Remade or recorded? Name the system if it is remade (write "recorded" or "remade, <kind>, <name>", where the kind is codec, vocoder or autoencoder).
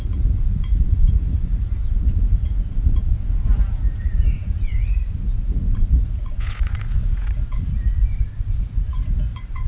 remade, vocoder, Vocos